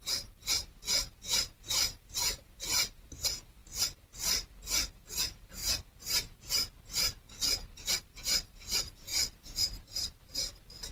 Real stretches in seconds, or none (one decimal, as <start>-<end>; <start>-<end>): 3.6-4.9; 5.6-8.0; 9.1-9.6